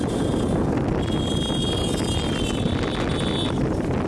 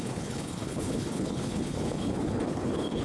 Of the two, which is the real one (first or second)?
first